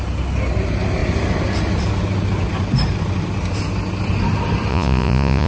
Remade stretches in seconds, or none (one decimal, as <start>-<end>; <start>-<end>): 4.7-5.5